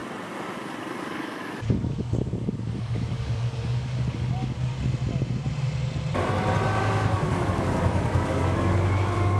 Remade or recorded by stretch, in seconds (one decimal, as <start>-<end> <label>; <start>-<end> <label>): 0.0-1.0 recorded; 1.0-4.7 remade; 4.7-6.8 recorded; 6.8-9.4 remade